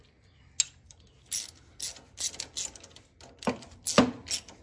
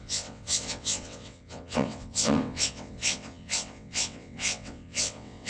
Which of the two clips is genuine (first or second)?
first